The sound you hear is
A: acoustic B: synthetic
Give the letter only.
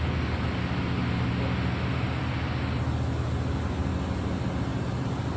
A